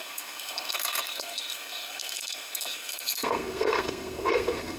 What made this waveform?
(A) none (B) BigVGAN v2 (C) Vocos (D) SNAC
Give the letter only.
D